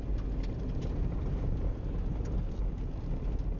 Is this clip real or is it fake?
real